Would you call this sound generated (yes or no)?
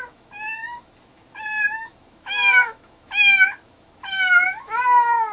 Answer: yes